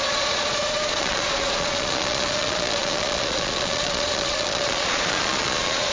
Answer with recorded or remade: remade